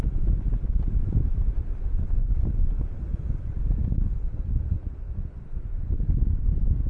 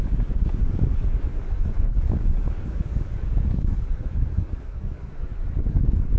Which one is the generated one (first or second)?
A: second